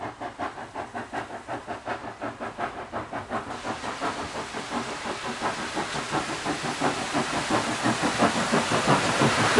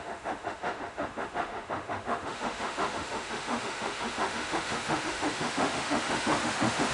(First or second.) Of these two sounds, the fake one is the second